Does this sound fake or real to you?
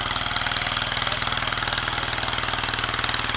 real